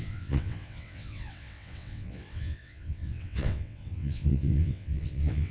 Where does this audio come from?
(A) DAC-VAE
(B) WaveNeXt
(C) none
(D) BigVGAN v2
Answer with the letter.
B